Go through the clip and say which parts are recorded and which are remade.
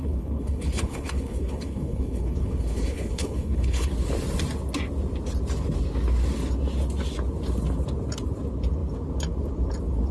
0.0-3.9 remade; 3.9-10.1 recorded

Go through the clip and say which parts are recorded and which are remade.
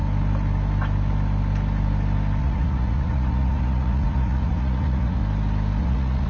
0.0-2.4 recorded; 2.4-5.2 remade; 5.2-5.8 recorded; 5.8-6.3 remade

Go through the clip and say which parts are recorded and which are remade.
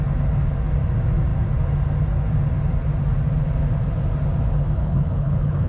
0.0-4.8 recorded; 4.8-5.7 remade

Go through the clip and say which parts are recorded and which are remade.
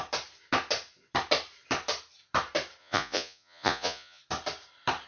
0.0-2.8 recorded; 2.8-4.2 remade; 4.2-5.1 recorded